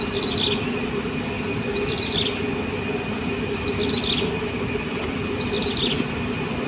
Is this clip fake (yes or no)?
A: no